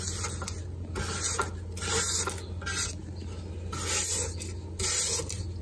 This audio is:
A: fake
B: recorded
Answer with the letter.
B